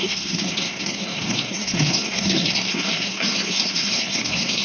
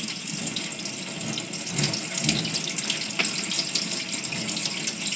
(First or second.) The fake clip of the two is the first